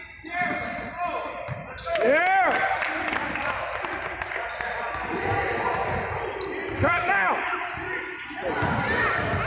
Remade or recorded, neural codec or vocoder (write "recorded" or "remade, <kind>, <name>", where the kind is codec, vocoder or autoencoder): recorded